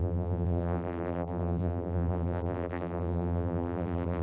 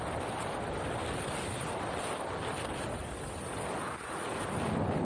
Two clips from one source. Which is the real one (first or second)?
second